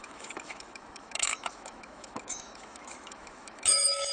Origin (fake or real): fake